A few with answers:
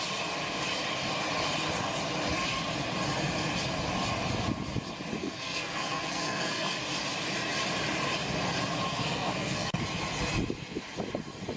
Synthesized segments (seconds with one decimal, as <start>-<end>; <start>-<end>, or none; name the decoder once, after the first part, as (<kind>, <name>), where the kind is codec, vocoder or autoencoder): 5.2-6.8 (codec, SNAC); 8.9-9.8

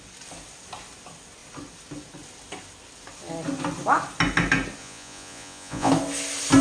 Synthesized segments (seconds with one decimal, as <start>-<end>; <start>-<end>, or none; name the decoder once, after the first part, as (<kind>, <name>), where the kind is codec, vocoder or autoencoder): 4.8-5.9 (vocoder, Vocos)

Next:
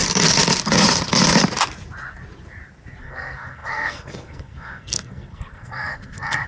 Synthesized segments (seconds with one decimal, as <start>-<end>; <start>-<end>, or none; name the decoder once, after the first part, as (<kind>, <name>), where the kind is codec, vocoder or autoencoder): 3.0-6.5 (codec, SNAC)

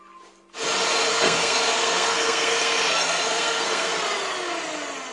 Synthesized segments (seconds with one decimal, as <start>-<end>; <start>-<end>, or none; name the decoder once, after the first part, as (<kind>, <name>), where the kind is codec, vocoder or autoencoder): 1.1-3.9 (codec, SNAC)

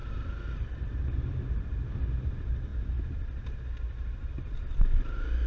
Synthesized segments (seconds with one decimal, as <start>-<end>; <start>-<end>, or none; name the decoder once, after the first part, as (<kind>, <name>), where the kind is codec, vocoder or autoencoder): none

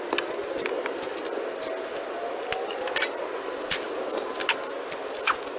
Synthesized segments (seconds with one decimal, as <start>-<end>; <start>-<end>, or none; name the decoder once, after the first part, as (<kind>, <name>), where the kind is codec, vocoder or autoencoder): none